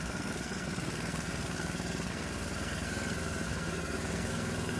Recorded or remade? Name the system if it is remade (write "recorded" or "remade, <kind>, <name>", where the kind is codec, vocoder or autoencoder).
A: remade, codec, SNAC